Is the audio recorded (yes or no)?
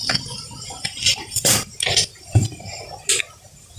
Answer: yes